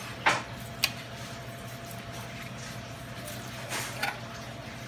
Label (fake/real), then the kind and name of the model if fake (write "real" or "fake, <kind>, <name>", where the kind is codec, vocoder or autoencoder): real